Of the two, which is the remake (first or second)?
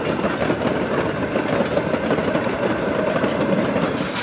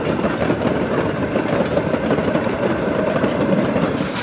second